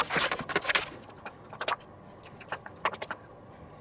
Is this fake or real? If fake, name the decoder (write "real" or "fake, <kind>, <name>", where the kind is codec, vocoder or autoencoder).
real